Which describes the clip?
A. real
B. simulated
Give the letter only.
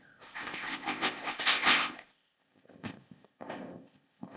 B